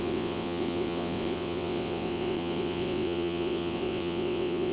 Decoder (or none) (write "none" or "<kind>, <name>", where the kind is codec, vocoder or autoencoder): vocoder, WaveNeXt